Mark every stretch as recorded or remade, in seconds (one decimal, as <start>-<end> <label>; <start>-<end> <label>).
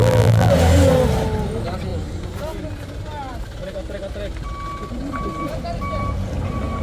0.0-0.5 remade; 0.5-6.8 recorded